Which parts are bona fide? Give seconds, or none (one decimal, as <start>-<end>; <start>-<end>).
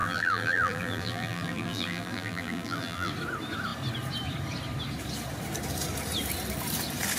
3.1-7.2